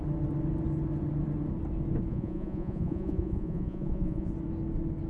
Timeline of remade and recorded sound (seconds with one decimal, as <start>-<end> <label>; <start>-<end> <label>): 0.0-2.1 recorded; 2.1-4.3 remade; 4.3-5.1 recorded